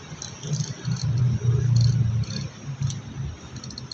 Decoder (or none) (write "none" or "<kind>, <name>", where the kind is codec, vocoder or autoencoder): none